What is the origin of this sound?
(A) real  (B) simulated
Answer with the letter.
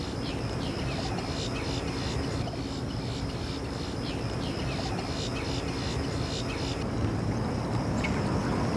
A